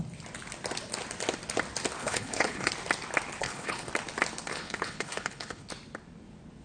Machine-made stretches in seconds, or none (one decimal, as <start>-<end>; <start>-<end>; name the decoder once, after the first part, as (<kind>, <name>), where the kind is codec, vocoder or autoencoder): 2.0-2.7 (codec, HILCodec); 3.4-3.9; 4.5-5.7